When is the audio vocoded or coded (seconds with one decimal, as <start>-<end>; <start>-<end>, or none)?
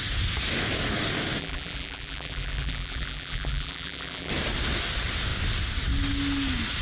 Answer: 1.4-4.3